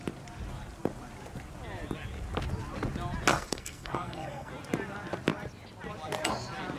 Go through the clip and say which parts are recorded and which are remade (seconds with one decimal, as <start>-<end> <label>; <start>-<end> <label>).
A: 0.0-3.3 recorded; 3.3-4.5 remade; 4.5-6.8 recorded